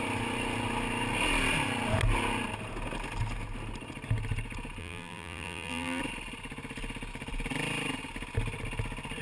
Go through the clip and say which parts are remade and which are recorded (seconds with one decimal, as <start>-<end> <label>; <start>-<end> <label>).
0.0-4.8 recorded; 4.8-6.0 remade; 6.0-9.2 recorded